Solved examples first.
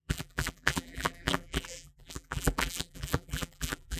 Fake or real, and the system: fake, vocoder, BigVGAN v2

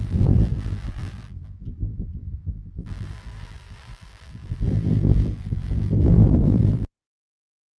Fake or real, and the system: fake, vocoder, BigVGAN v2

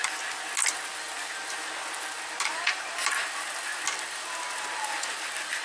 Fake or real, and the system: real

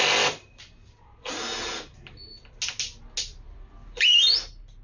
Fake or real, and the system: real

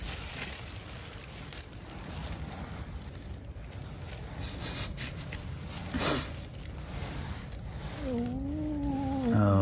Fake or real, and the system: real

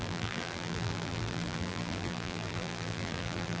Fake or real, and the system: fake, vocoder, BigVGAN v2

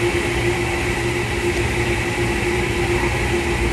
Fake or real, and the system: real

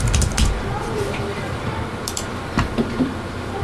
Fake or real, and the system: fake, vocoder, BigVGAN v2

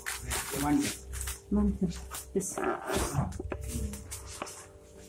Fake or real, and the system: real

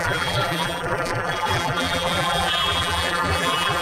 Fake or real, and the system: fake, vocoder, BigVGAN v2